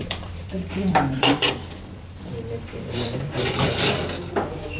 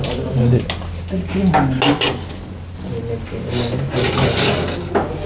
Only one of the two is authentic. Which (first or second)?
second